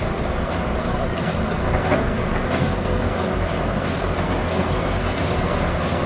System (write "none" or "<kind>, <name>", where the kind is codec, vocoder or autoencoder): codec, SNAC